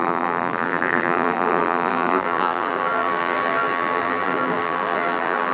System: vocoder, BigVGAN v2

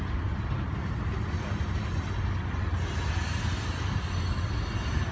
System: none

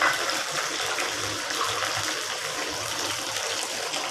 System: vocoder, BigVGAN v2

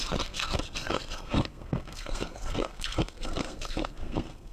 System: codec, SNAC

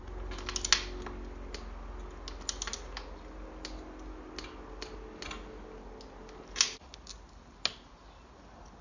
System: none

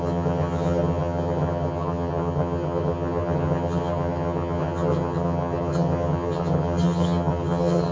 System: vocoder, HiFi-GAN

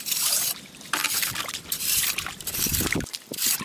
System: vocoder, BigVGAN v2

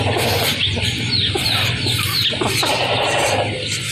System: none